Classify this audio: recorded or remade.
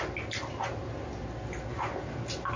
recorded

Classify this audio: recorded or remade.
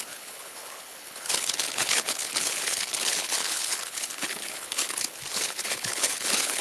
remade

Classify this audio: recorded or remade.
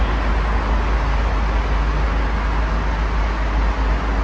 recorded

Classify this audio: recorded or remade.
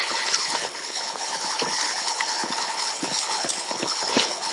remade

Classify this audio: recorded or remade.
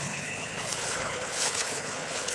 remade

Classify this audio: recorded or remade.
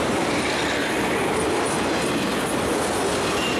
recorded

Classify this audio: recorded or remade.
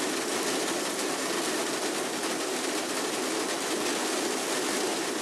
recorded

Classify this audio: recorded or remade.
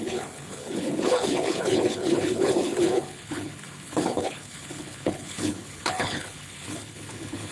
remade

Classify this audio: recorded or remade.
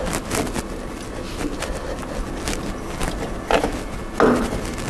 recorded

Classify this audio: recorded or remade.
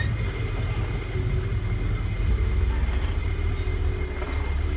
recorded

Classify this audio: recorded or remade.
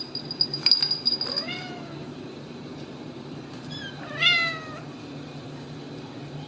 recorded